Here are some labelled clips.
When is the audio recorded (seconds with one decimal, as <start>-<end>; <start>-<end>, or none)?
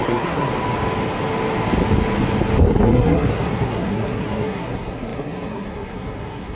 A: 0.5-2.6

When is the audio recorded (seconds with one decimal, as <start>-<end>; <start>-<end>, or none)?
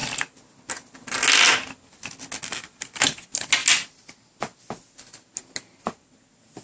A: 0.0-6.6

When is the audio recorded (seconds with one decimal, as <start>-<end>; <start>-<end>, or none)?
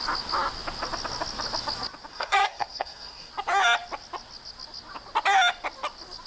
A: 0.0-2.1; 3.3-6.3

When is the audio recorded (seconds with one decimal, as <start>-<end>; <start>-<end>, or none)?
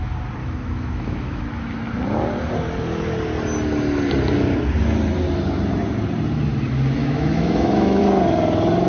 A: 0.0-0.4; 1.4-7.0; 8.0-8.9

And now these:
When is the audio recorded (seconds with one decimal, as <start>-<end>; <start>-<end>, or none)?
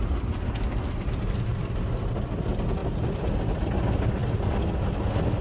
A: 0.0-5.4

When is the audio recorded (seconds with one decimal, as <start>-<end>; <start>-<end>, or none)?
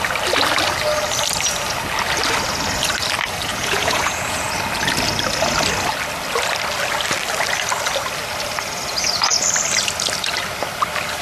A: 0.0-3.5; 4.5-11.2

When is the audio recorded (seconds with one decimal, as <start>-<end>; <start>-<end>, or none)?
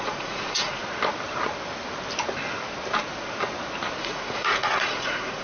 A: 0.8-4.0